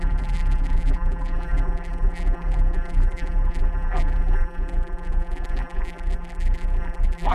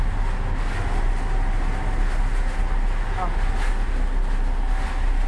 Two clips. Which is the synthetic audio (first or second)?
first